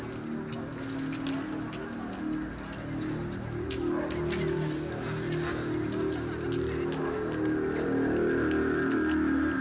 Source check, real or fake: real